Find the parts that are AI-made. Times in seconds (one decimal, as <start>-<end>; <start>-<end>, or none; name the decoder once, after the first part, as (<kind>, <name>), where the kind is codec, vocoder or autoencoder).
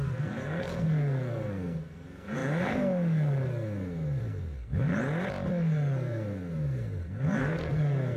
0.0-4.9 (codec, SNAC); 5.5-8.2